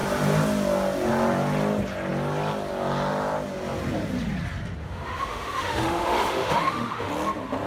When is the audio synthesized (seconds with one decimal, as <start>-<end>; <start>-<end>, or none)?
4.8-7.1